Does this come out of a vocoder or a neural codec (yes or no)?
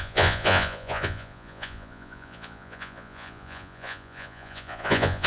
yes